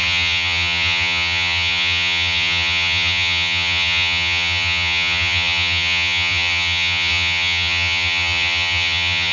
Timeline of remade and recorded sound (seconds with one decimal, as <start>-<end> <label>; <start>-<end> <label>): 0.0-9.3 remade